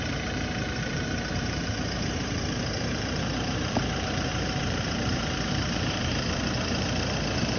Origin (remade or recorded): remade